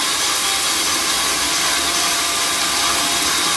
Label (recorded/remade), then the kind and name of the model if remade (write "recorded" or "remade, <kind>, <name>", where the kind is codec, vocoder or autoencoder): recorded